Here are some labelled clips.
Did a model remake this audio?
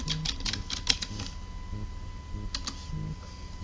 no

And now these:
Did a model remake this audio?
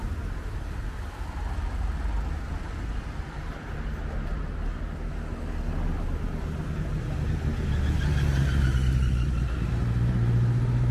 no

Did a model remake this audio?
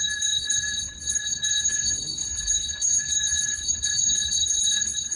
yes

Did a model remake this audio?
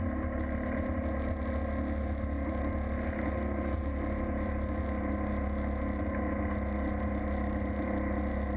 no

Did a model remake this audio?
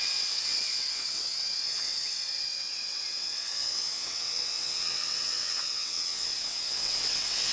yes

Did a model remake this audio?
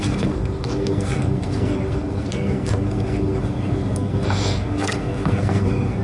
yes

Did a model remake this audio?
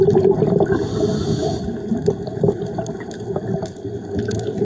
no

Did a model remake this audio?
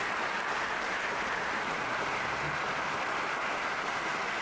no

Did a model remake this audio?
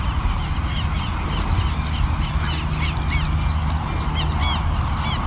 no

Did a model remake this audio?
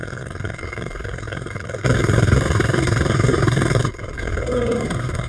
yes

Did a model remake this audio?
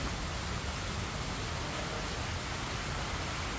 no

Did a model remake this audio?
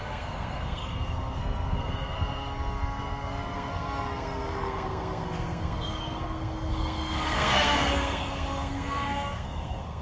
yes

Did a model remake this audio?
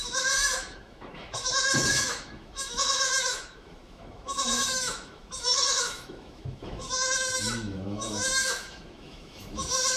yes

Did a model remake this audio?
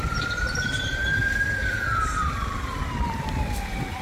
yes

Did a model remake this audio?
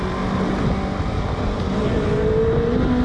no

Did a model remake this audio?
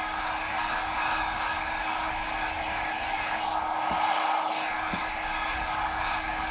yes